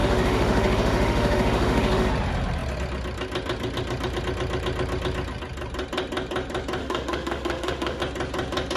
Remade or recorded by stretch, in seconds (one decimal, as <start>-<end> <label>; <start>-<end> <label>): 0.0-2.1 remade; 2.1-6.8 recorded; 6.8-8.0 remade; 8.0-8.8 recorded